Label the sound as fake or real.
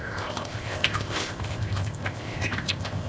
fake